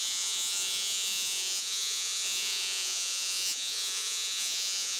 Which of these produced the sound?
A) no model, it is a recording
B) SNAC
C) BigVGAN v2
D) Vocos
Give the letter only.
D